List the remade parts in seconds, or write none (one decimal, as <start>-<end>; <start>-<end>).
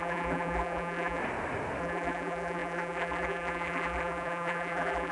0.0-1.2; 1.8-5.1